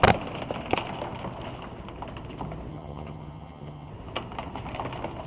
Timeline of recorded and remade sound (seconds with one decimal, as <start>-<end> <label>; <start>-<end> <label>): 0.0-2.7 recorded; 2.7-3.9 remade; 3.9-5.3 recorded